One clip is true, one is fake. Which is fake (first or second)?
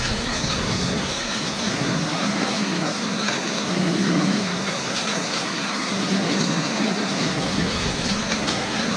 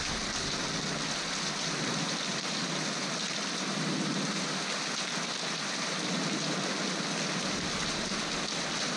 first